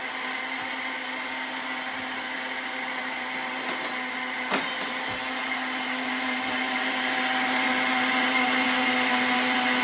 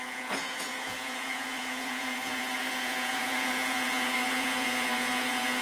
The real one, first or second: first